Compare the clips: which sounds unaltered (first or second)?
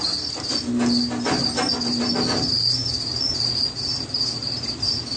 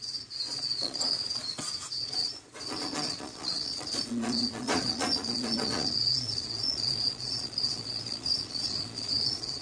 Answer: first